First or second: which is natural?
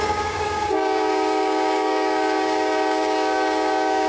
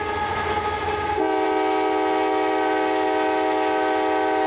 second